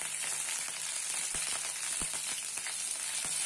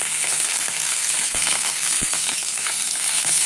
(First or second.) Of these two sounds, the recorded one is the first